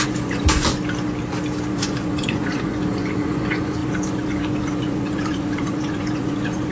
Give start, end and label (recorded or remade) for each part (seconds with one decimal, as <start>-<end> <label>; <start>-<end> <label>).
0.0-0.7 remade; 0.7-1.7 recorded; 1.7-6.7 remade